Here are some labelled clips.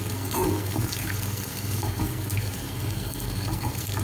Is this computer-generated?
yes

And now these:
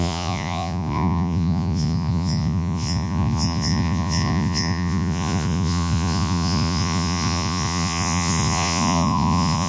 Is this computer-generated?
yes